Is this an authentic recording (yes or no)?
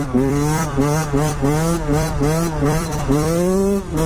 no